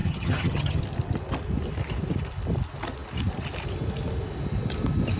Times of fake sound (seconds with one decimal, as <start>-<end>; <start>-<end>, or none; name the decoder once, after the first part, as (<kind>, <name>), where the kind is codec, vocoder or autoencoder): 0.0-0.8 (vocoder, HiFi-GAN)